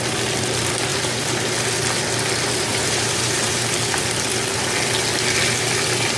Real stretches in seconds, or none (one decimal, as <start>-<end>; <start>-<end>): 0.0-0.9; 1.5-2.7; 3.7-6.2